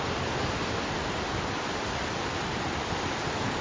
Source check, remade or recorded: recorded